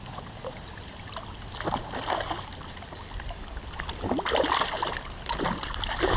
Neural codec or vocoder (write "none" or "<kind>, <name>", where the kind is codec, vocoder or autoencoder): none